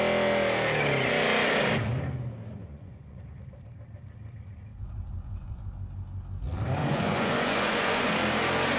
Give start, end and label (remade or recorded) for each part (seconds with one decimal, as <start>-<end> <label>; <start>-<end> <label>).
0.0-2.6 recorded; 2.6-3.2 remade; 3.2-4.7 recorded; 4.7-5.7 remade; 5.7-6.8 recorded; 6.8-8.1 remade; 8.1-8.8 recorded